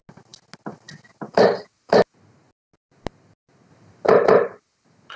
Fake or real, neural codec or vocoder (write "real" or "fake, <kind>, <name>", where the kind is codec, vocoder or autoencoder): real